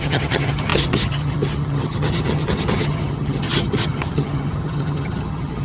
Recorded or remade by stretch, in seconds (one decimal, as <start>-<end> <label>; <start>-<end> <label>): 0.0-5.6 remade